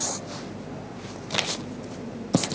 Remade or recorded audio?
recorded